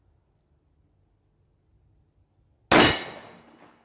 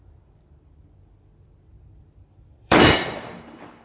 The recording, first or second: first